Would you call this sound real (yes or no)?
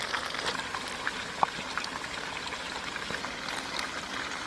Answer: yes